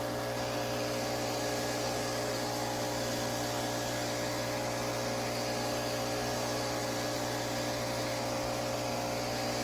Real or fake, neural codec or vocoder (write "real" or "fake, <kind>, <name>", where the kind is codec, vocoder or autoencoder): real